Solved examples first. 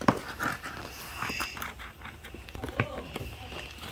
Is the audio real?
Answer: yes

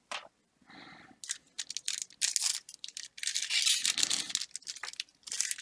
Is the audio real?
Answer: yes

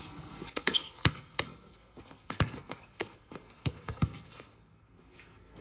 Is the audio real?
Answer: no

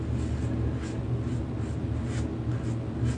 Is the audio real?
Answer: yes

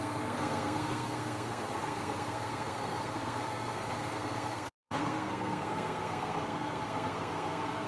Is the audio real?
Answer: no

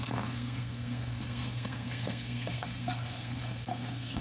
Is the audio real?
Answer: no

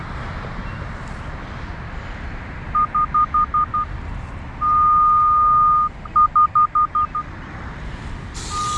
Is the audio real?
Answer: yes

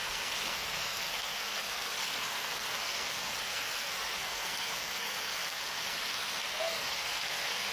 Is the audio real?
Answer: no